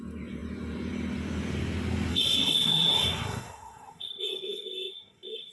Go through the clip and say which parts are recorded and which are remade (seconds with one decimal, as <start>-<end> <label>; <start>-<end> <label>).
0.0-2.1 recorded; 2.1-5.5 remade